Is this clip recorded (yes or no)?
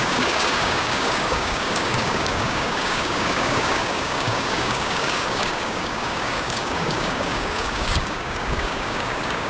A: no